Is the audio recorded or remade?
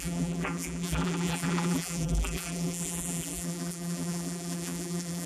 remade